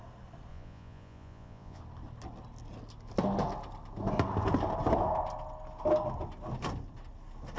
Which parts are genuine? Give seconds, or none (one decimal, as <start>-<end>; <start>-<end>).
0.0-0.5; 1.8-7.6